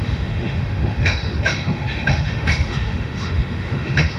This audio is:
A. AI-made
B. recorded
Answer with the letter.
A